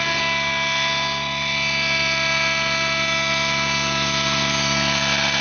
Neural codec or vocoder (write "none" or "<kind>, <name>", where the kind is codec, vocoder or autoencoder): none